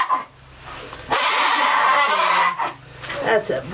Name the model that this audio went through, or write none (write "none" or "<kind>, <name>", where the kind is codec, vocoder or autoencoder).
none